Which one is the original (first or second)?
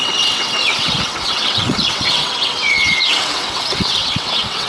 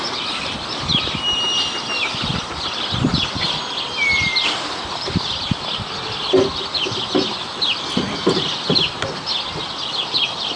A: second